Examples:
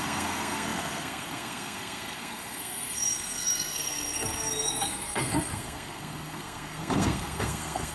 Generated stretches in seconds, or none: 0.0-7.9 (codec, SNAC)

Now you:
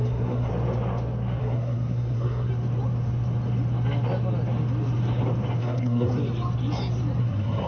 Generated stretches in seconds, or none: 0.0-0.5 (codec, SNAC); 1.4-2.5; 5.6-6.1; 7.2-7.7

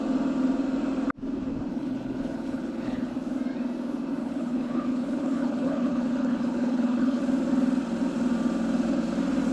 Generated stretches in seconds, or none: 1.7-3.1 (codec, HILCodec); 4.2-7.2

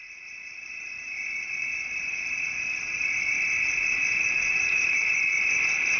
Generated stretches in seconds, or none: 0.0-6.0 (vocoder, BigVGAN v2)

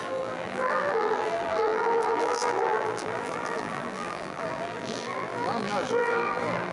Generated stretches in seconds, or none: 0.0-6.7 (vocoder, BigVGAN v2)

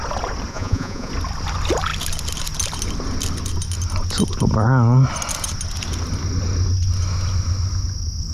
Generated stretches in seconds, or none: 0.5-1.1 (vocoder, Vocos)